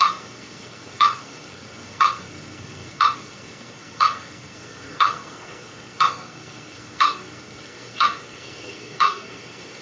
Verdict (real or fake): fake